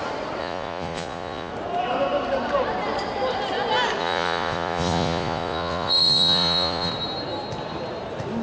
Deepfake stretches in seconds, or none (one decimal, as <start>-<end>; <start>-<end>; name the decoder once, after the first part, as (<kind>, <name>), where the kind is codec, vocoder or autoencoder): 0.4-1.5 (vocoder, Vocos); 4.0-6.9